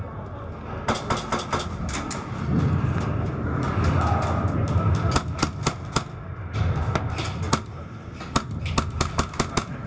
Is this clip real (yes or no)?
yes